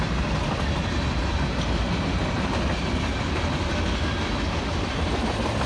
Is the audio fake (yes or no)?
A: no